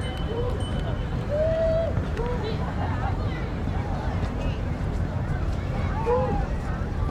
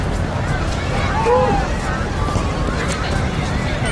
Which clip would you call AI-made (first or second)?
first